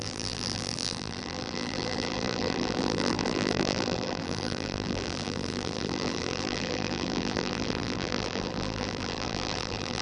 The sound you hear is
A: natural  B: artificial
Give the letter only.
B